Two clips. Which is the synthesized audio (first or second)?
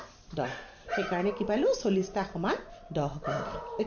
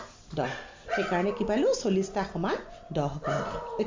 first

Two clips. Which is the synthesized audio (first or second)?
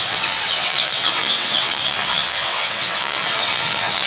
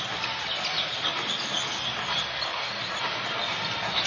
first